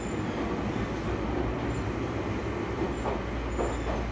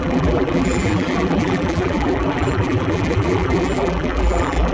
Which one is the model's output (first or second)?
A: second